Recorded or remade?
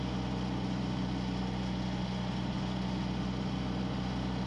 recorded